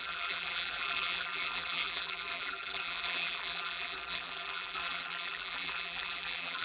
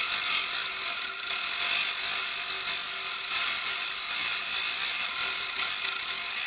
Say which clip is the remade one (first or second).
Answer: first